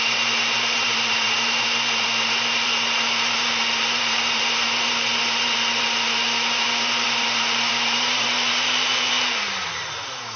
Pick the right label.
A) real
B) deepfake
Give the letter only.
B